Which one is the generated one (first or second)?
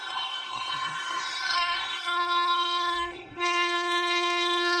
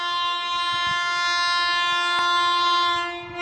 first